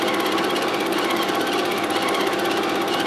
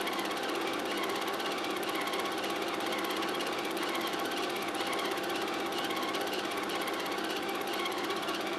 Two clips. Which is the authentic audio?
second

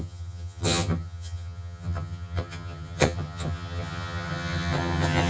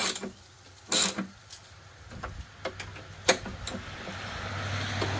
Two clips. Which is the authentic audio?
second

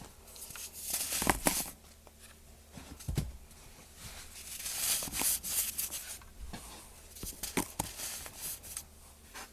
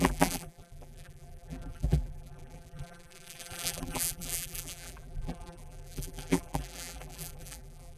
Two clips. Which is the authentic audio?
first